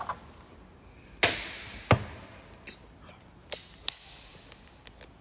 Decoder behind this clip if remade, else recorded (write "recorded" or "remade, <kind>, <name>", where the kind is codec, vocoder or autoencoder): recorded